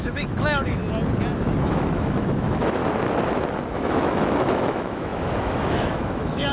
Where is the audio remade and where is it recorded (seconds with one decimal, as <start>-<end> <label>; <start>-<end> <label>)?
0.0-0.8 remade; 0.8-1.6 recorded; 1.6-2.8 remade; 2.8-3.7 recorded; 3.7-6.5 remade